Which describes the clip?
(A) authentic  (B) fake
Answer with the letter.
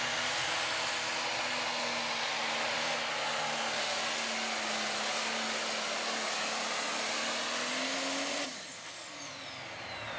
A